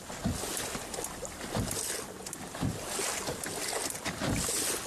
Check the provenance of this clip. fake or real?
real